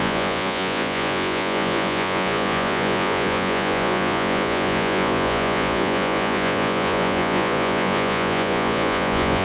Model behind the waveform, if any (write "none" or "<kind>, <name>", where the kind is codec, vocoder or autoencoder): vocoder, Vocos